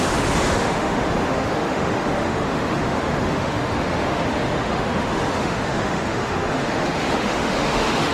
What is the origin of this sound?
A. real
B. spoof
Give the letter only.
B